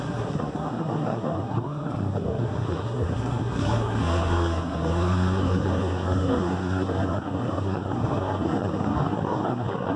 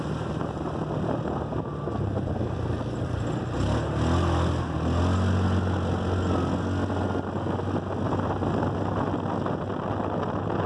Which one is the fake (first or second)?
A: first